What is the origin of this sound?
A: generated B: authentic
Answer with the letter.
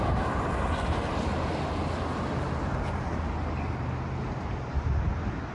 B